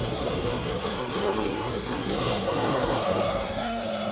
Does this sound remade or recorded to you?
remade